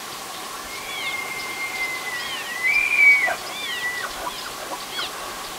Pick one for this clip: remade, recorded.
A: recorded